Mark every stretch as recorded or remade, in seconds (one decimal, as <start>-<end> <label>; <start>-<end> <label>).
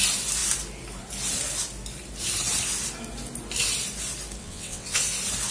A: 0.0-4.4 recorded; 4.4-5.0 remade; 5.0-5.5 recorded